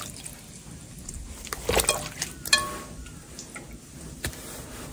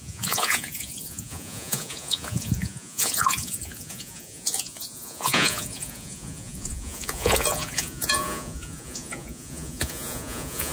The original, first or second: first